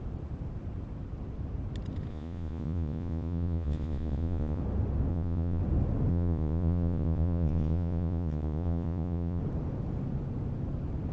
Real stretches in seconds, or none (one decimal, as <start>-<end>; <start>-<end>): 0.0-2.1; 4.6-5.1; 5.6-6.1; 9.4-11.1